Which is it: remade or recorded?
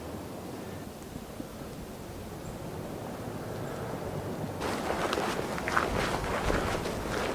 recorded